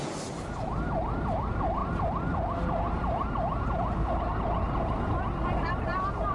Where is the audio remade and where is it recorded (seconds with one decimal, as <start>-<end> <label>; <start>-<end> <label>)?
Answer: 0.0-6.3 recorded